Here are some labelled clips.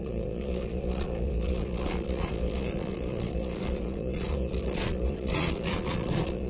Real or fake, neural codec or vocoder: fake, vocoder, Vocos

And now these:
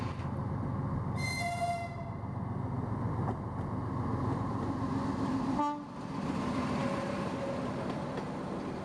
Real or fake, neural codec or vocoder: real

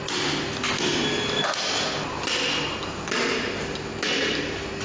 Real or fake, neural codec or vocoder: real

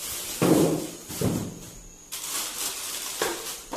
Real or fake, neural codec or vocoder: real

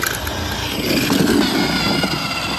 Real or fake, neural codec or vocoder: real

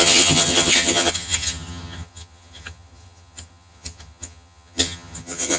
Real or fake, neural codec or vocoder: fake, vocoder, HiFi-GAN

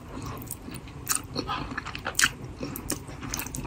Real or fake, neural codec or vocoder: real